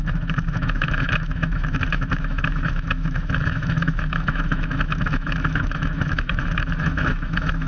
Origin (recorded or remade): remade